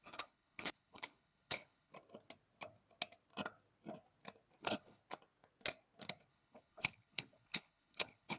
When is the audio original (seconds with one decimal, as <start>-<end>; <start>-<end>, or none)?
1.9-4.6; 5.0-6.3